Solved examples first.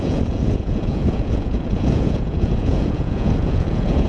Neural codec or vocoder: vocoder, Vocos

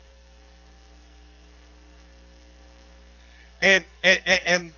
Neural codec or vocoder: codec, SNAC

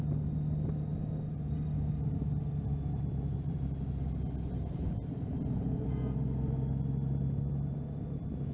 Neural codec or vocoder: none